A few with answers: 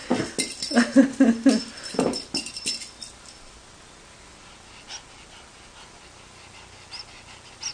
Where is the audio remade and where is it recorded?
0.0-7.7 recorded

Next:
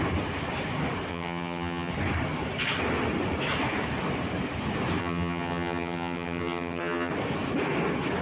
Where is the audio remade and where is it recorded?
0.0-1.1 recorded; 1.1-1.9 remade; 1.9-5.0 recorded; 5.0-7.1 remade; 7.1-8.2 recorded

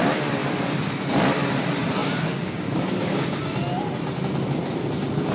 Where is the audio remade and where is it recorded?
0.0-2.0 recorded; 2.0-3.5 remade; 3.5-5.3 recorded

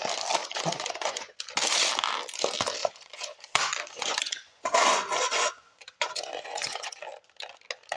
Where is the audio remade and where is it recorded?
0.0-0.4 recorded; 0.4-1.4 remade; 1.4-2.8 recorded; 2.8-7.0 remade; 7.0-8.0 recorded

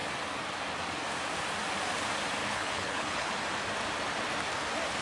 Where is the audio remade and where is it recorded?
0.0-2.4 recorded; 2.4-3.3 remade; 3.3-5.0 recorded